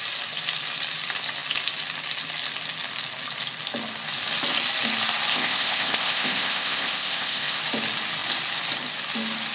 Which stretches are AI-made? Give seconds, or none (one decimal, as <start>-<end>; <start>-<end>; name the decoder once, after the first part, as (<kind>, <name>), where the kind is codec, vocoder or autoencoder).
5.3-7.6 (codec, ZipCodec)